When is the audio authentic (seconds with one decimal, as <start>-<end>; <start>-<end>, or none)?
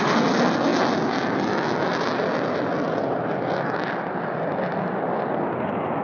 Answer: 0.0-6.0